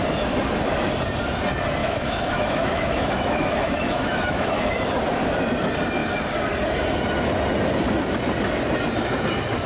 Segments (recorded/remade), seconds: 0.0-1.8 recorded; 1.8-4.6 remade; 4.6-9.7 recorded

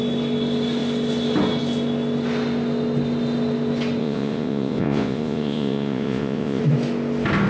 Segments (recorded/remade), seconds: 0.0-4.0 recorded; 4.0-6.6 remade; 6.6-7.5 recorded

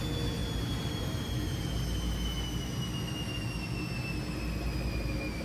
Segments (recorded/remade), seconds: 0.0-0.4 recorded; 0.4-1.6 remade; 1.6-5.4 recorded